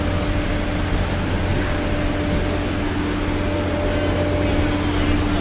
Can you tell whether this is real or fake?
real